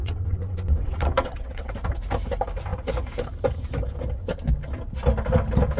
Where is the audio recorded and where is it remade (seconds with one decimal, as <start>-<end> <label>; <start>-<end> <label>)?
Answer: 0.0-1.7 remade; 1.7-5.8 recorded